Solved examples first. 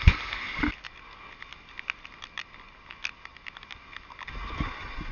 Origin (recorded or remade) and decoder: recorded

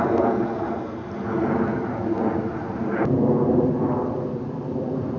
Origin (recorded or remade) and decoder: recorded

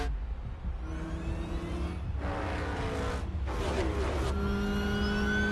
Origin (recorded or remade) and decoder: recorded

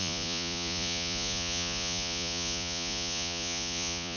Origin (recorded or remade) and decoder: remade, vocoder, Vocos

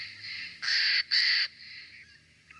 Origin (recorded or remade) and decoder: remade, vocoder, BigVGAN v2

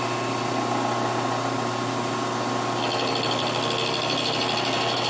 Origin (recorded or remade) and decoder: recorded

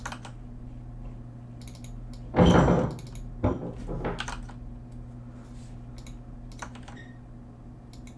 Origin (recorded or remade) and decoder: recorded